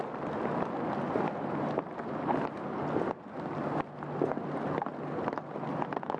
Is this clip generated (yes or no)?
no